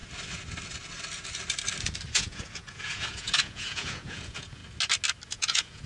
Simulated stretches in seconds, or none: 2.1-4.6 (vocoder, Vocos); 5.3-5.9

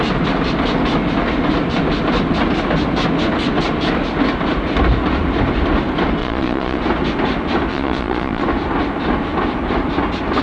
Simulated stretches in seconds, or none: 6.2-6.8 (vocoder, Vocos); 7.7-8.4

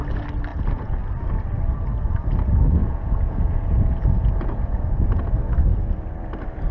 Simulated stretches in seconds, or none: 0.5-1.0 (vocoder, Vocos); 2.8-5.3

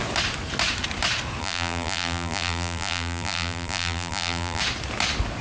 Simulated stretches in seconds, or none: 1.4-4.6 (vocoder, BigVGAN v2)

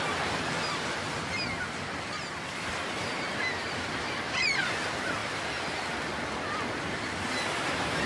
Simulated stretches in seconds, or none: none

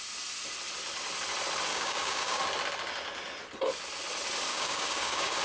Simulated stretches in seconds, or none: 1.7-2.4 (codec, DAC); 4.5-5.4

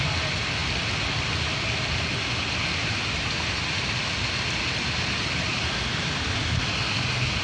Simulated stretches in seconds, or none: none

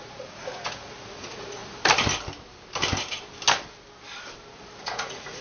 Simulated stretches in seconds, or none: 0.0-1.6 (vocoder, Vocos); 4.8-5.4